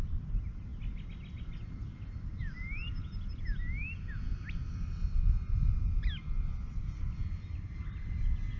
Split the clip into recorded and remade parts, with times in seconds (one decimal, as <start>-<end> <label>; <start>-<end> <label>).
0.0-7.2 recorded; 7.2-8.6 remade